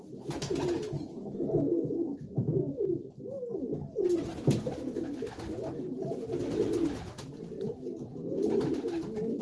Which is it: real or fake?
real